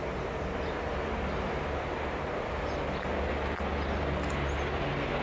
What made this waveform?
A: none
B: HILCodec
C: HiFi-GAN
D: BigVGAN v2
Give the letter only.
A